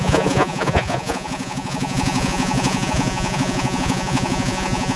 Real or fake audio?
fake